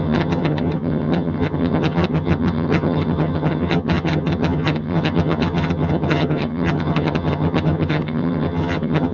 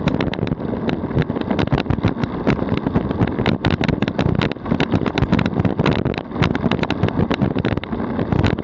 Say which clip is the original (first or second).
second